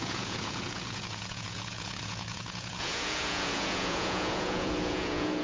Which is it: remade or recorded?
remade